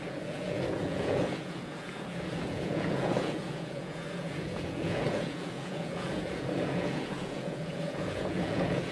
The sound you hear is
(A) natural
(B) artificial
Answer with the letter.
B